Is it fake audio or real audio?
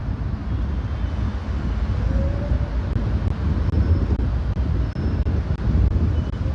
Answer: real